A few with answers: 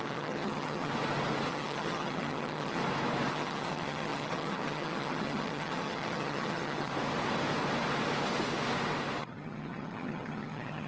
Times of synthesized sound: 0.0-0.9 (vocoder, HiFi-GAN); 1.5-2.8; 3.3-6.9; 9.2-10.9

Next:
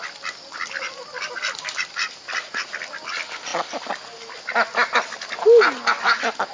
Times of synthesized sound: none

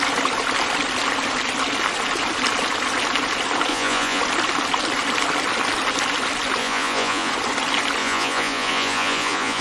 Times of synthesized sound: 3.7-4.2 (vocoder, Vocos); 6.6-7.3; 8.0-9.6

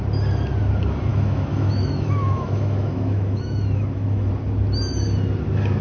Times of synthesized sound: 1.1-4.3 (autoencoder, DAC-VAE)